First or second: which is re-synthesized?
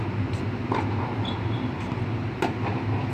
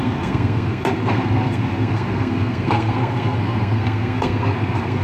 second